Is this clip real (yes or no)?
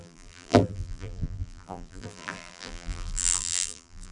no